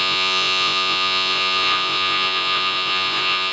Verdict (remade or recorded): remade